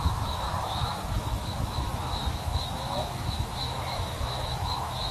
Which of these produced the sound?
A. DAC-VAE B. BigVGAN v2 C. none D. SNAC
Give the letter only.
A